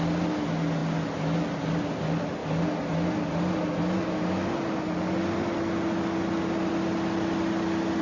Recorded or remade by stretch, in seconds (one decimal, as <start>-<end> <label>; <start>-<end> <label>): 0.0-8.0 recorded